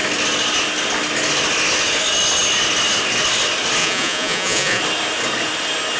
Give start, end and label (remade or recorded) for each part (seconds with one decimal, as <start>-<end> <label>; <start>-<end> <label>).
0.0-3.8 recorded; 3.8-4.8 remade; 4.8-6.0 recorded